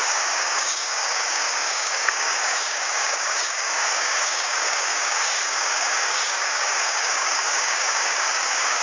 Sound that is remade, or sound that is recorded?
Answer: remade